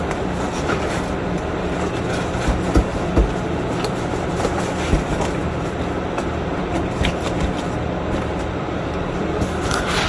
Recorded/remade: recorded